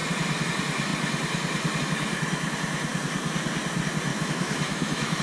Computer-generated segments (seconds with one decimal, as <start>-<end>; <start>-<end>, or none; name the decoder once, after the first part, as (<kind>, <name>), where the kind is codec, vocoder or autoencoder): 4.1-5.2 (autoencoder, DAC-VAE)